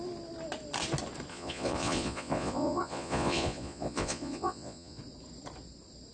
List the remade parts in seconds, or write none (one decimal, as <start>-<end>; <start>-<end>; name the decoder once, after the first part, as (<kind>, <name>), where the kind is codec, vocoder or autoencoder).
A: 1.3-5.0 (vocoder, Vocos)